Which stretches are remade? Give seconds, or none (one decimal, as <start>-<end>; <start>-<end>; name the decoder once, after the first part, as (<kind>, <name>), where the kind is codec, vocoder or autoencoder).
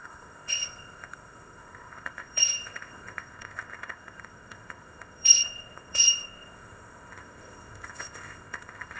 0.0-9.0 (codec, ZipCodec)